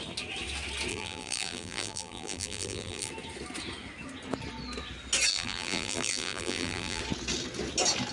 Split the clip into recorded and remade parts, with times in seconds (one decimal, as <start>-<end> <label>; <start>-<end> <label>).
0.0-0.9 recorded; 0.9-3.1 remade; 3.1-5.3 recorded; 5.3-7.0 remade; 7.0-8.1 recorded